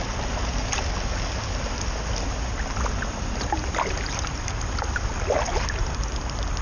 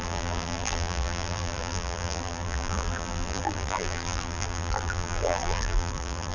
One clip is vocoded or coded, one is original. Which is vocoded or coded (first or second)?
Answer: second